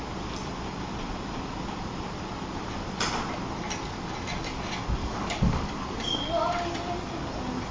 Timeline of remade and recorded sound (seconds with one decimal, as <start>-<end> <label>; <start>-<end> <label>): 0.0-5.0 recorded; 5.0-5.7 remade; 5.7-7.7 recorded